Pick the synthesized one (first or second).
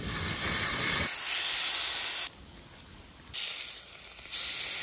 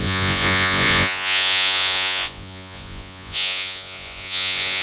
second